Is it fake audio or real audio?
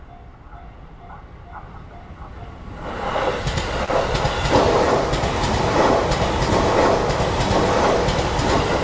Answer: real